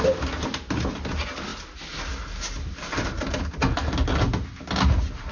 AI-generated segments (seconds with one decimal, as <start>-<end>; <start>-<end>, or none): none